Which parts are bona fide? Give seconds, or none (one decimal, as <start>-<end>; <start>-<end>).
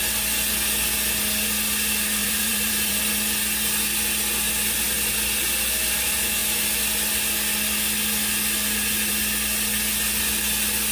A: 0.0-2.2; 3.0-10.9